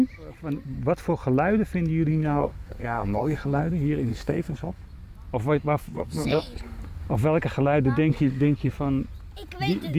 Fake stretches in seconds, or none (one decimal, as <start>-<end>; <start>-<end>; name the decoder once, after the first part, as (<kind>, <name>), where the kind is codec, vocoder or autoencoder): 2.1-3.6 (codec, SNAC); 4.1-4.9; 5.8-6.8; 8.1-8.7